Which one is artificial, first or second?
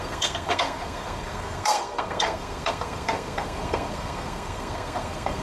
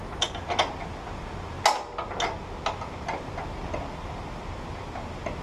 first